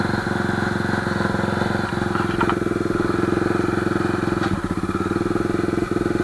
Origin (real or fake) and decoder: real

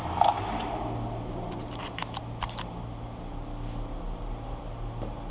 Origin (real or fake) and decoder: real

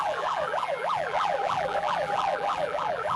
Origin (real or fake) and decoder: fake, vocoder, BigVGAN v2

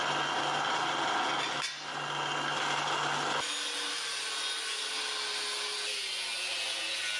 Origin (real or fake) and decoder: real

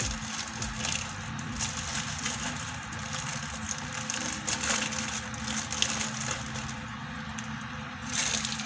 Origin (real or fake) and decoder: real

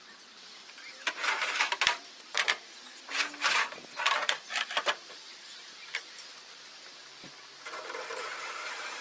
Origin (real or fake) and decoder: fake, vocoder, BigVGAN v2